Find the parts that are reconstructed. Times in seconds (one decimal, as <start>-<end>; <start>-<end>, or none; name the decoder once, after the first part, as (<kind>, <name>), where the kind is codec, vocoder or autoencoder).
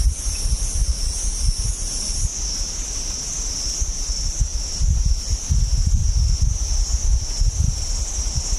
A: none